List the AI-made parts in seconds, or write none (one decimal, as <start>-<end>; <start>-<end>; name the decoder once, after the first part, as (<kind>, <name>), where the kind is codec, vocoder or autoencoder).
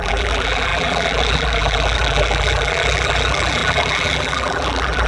0.0-5.1 (vocoder, BigVGAN v2)